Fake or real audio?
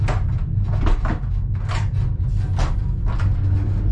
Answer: real